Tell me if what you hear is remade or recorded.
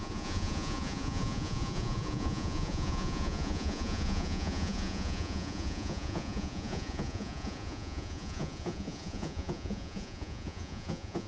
remade